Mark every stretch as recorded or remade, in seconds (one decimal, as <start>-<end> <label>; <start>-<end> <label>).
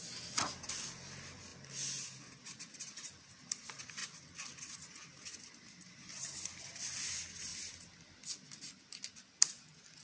0.0-10.0 recorded